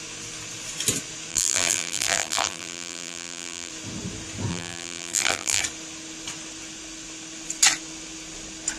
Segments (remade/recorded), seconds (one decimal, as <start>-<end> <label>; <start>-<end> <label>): 0.0-1.3 recorded; 1.3-3.7 remade; 3.7-4.5 recorded; 4.5-5.6 remade; 5.6-8.8 recorded